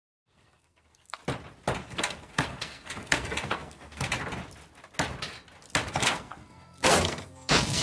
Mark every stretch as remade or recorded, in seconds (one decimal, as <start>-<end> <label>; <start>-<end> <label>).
0.0-1.2 remade; 1.2-1.8 recorded; 1.8-4.1 remade; 4.1-5.9 recorded; 5.9-7.8 remade